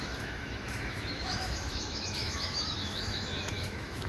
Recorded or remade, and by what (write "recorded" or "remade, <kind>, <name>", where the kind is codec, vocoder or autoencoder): remade, autoencoder, DAC-VAE